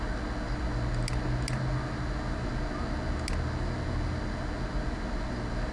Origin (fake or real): real